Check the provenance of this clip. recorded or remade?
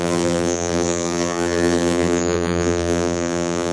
remade